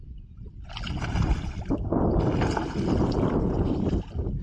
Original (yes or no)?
yes